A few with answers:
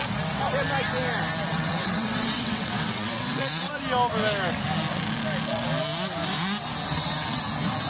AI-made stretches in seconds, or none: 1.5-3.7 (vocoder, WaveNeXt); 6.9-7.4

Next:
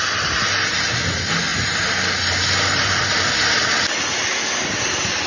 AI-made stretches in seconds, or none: none

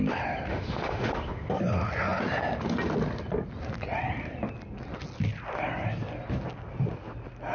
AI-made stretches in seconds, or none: 0.5-1.5 (autoencoder, DAC-VAE)

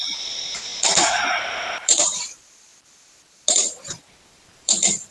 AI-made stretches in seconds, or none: 0.0-2.7 (vocoder, BigVGAN v2); 4.3-5.1

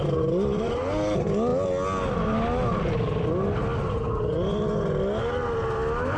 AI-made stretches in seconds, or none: none